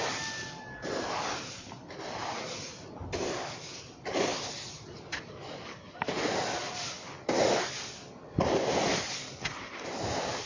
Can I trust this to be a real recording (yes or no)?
yes